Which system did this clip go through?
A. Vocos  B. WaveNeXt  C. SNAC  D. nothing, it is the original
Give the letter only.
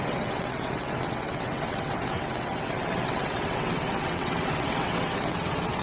B